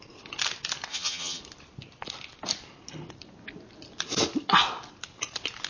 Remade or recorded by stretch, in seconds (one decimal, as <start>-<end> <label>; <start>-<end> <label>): 0.0-0.9 recorded; 0.9-1.4 remade; 1.4-5.7 recorded